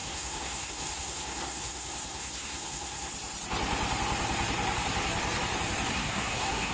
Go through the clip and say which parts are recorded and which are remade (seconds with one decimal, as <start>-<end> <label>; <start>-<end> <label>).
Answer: 0.0-3.1 remade; 3.1-5.9 recorded; 5.9-6.7 remade

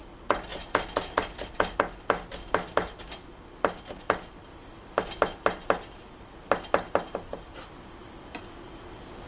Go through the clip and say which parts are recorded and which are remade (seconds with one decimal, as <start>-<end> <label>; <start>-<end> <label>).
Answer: 0.0-9.3 recorded

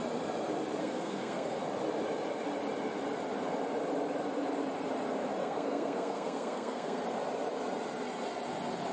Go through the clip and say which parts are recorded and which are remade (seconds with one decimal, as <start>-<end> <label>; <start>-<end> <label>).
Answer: 0.0-0.8 recorded; 0.8-1.6 remade; 1.6-5.4 recorded; 5.4-7.0 remade; 7.0-8.9 recorded

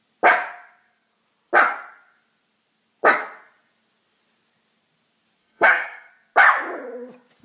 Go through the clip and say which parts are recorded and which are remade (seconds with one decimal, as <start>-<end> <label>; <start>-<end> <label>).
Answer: 0.0-5.4 recorded; 5.4-6.1 remade; 6.1-7.4 recorded